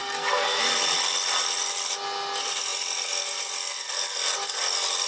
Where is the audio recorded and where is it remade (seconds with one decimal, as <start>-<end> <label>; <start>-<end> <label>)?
0.0-0.6 remade; 0.6-5.1 recorded

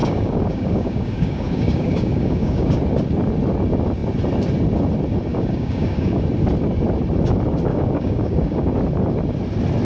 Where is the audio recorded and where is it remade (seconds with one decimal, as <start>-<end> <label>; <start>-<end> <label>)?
0.0-2.8 remade; 2.8-5.3 recorded; 5.3-6.2 remade; 6.2-7.7 recorded; 7.7-8.7 remade; 8.7-9.8 recorded

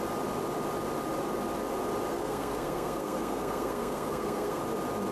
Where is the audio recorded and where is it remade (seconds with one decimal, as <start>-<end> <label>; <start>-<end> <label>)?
0.0-2.1 recorded; 2.1-4.6 remade; 4.6-5.1 recorded

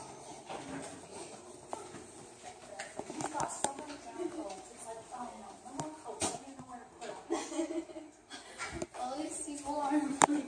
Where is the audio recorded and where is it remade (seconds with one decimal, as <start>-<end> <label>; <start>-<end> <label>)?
0.0-10.5 recorded

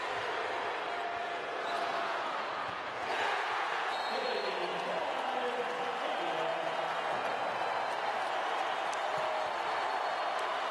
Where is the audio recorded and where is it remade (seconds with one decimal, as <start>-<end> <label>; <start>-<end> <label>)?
0.0-1.2 recorded; 1.2-4.3 remade; 4.3-6.5 recorded; 6.5-7.3 remade; 7.3-10.7 recorded

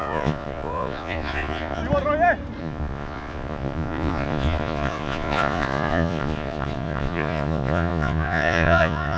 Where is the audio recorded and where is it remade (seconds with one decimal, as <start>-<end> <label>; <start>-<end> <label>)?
0.0-1.8 remade; 1.8-2.6 recorded; 2.6-9.2 remade

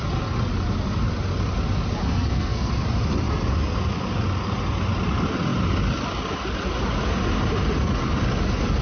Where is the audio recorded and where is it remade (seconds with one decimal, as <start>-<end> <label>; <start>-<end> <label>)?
0.0-2.0 recorded; 2.0-2.7 remade; 2.7-8.8 recorded